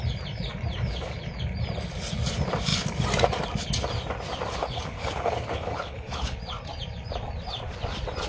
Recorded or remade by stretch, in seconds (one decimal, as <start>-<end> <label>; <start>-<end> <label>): 0.0-4.6 recorded; 4.6-6.3 remade; 6.3-8.3 recorded